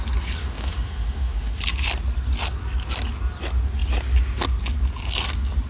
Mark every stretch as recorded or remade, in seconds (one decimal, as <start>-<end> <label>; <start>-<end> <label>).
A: 0.0-0.4 recorded; 0.4-1.6 remade; 1.6-5.7 recorded